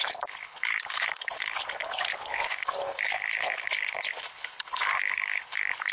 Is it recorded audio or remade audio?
remade